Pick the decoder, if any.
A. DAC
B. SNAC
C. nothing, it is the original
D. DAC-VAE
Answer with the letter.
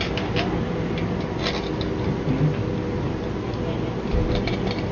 C